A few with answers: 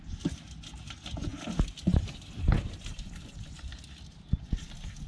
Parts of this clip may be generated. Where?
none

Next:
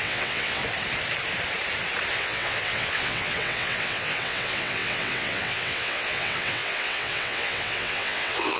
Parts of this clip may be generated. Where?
0.0-0.6 (vocoder, WaveNeXt); 2.1-8.6

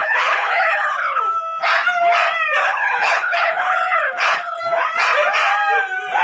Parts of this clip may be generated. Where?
0.0-1.2 (codec, HILCodec); 2.6-4.6

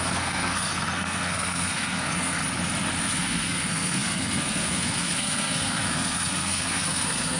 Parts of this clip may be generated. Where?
0.0-2.4 (codec, SNAC); 3.0-7.4

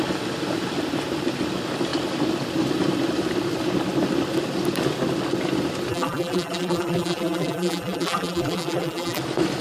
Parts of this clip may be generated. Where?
5.9-9.2 (vocoder, BigVGAN v2)

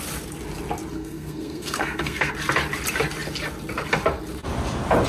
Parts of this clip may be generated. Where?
0.9-2.3 (codec, SNAC)